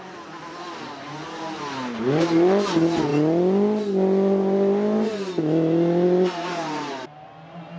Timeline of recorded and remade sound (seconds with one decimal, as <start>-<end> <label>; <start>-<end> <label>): 0.0-7.8 recorded